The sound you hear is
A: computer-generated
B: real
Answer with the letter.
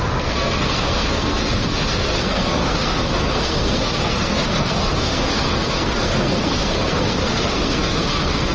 A